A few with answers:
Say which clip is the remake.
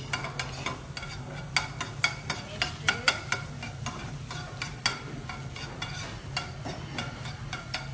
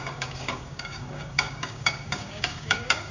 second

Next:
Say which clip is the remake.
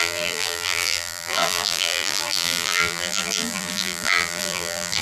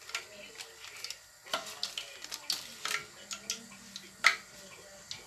first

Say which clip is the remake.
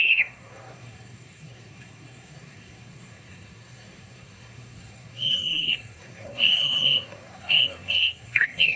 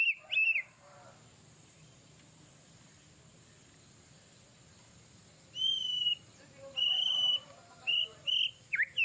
first